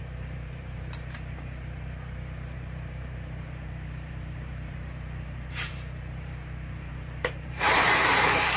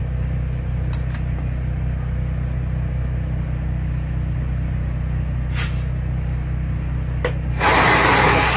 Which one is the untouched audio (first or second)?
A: second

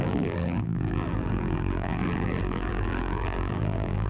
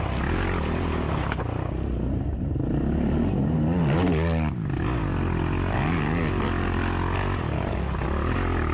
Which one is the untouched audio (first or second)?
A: second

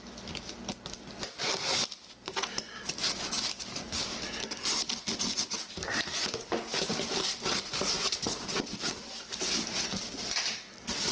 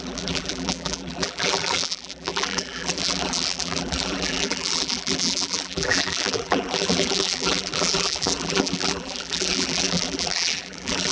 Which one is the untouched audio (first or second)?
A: first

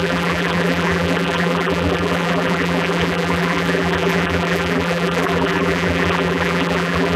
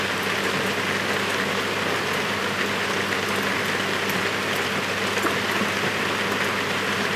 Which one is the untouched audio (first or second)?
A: second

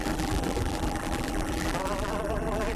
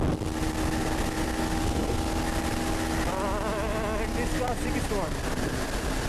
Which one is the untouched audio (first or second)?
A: second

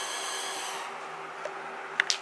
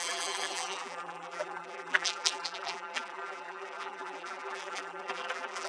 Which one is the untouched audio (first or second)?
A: first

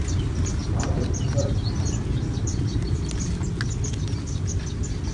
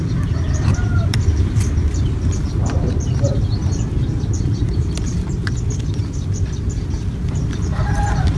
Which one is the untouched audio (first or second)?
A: first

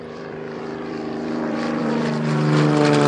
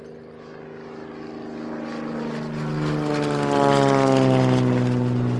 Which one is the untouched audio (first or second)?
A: second